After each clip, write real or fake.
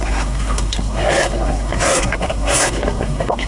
fake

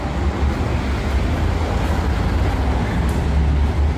real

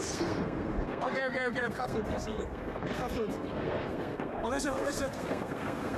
fake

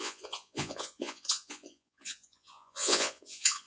fake